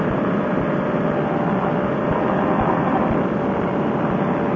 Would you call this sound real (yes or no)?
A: yes